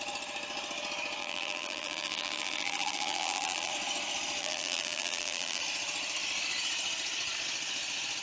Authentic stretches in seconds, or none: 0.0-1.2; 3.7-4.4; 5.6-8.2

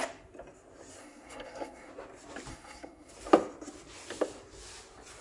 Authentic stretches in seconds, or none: 0.0-1.0; 1.9-2.5; 3.1-5.2

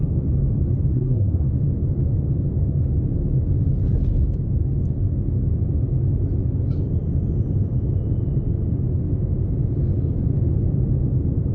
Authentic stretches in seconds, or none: 0.0-0.9; 1.5-11.5

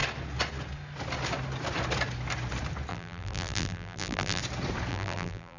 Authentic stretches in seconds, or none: 0.0-2.9; 4.4-4.9

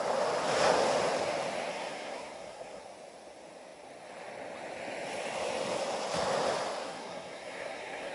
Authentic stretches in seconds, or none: 0.0-1.7; 2.8-6.8